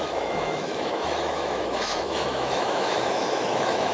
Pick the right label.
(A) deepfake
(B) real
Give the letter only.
A